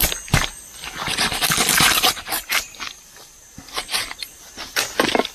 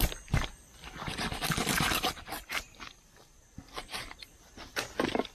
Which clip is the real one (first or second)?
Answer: first